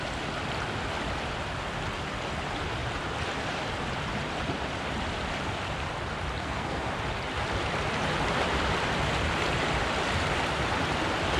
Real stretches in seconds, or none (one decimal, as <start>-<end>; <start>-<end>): 0.0-6.4; 6.9-11.4